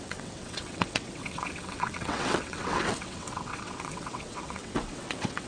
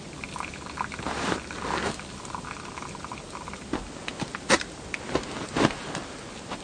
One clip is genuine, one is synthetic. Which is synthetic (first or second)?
first